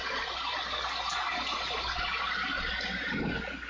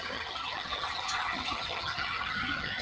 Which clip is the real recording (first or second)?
first